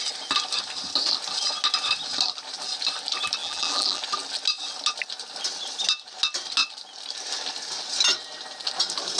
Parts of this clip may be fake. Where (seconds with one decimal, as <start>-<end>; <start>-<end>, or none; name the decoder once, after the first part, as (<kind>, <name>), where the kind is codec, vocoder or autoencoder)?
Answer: 3.4-4.0 (vocoder, BigVGAN v2)